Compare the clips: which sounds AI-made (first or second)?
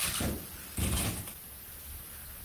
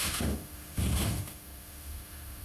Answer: second